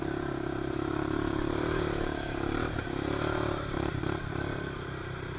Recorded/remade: remade